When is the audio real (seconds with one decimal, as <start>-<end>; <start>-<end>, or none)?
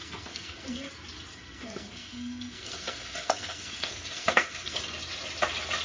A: 0.9-1.3; 4.8-5.8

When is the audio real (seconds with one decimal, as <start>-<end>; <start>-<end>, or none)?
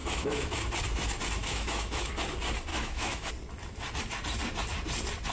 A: 0.6-1.4; 2.1-2.7; 3.3-5.3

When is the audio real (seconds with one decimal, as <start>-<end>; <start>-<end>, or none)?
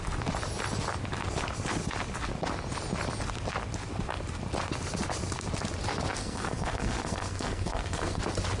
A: 0.0-6.2; 8.2-8.6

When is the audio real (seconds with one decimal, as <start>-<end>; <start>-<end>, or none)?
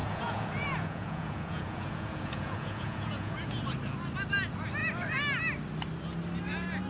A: 3.6-6.9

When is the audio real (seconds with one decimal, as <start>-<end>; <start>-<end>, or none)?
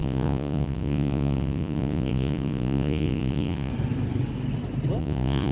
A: 3.7-5.0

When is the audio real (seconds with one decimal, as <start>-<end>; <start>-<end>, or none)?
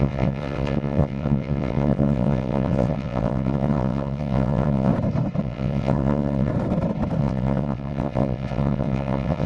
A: 4.9-5.4; 6.5-7.2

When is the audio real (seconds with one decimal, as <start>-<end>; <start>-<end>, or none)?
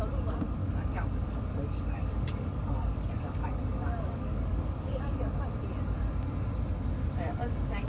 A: 0.0-0.6; 5.3-7.3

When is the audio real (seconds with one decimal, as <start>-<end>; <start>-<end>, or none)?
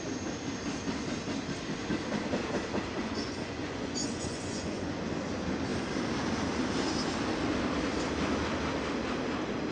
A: 0.0-3.0; 5.0-9.7